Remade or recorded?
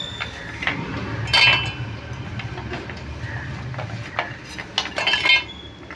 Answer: recorded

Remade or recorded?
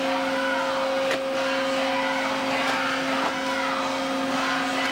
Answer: recorded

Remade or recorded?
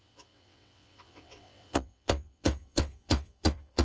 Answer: remade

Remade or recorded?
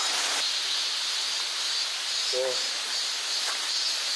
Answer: recorded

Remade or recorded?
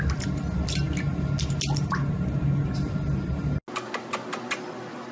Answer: recorded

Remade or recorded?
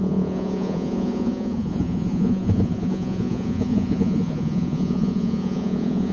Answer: remade